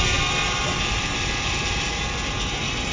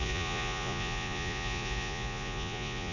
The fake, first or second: second